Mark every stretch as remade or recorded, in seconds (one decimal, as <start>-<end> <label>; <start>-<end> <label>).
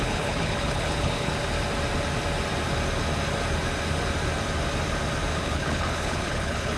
0.0-1.3 remade; 1.3-5.4 recorded; 5.4-6.8 remade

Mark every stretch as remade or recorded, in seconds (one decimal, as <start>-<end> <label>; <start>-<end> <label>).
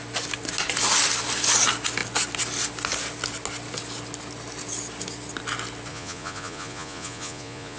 0.0-5.9 recorded; 5.9-7.8 remade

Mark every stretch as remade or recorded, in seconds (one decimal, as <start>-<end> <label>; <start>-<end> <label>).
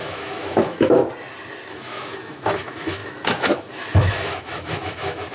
0.0-1.0 remade; 1.0-1.7 recorded; 1.7-5.3 remade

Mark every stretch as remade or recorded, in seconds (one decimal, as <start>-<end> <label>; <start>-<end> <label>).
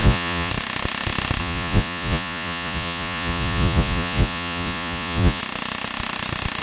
0.0-0.5 remade; 0.5-1.4 recorded; 1.4-5.4 remade; 5.4-6.6 recorded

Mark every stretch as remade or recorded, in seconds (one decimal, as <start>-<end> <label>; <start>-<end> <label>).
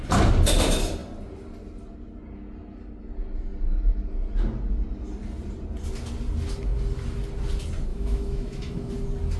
0.0-7.9 recorded; 7.9-8.9 remade; 8.9-9.4 recorded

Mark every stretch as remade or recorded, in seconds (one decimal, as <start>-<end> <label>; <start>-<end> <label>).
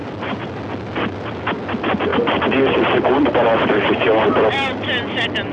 0.0-0.6 remade; 0.6-5.5 recorded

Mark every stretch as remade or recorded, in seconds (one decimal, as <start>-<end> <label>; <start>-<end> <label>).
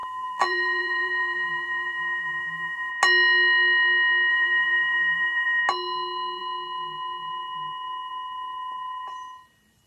0.0-2.9 remade; 2.9-4.3 recorded; 4.3-5.6 remade; 5.6-9.9 recorded